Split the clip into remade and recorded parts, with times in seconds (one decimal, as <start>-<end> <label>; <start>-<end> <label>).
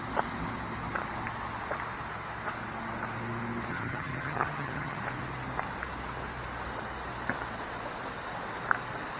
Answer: 0.0-3.7 recorded; 3.7-5.0 remade; 5.0-9.2 recorded